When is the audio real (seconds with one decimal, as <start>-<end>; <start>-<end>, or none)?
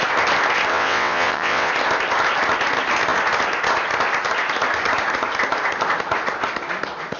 0.0-0.7; 1.7-7.2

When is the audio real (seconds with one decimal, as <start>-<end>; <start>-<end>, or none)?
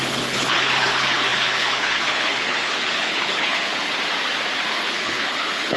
3.9-4.7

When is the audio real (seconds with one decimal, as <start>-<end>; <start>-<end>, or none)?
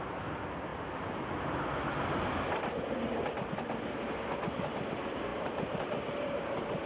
0.7-4.1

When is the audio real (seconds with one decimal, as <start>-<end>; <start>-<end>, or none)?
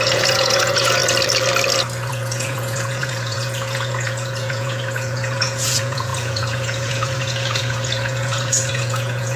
1.0-2.1